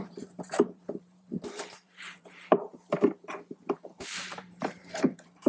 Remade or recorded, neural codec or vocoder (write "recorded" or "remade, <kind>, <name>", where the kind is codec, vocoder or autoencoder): remade, vocoder, BigVGAN v2